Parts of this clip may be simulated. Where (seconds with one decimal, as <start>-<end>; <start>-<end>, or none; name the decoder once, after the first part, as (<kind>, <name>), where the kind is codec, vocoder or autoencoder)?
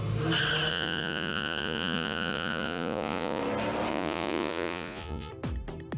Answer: 0.7-3.4 (vocoder, Vocos); 3.9-5.3